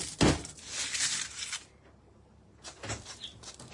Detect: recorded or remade recorded